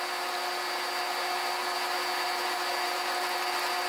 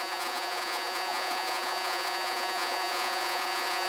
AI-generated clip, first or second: second